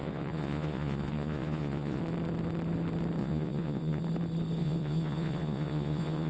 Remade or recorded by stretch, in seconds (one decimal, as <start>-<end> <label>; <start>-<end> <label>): 0.0-2.0 remade; 2.0-3.2 recorded; 3.2-4.0 remade; 4.0-4.6 recorded; 4.6-6.3 remade